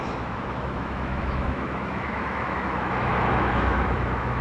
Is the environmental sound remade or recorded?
remade